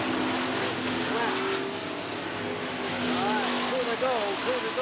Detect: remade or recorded recorded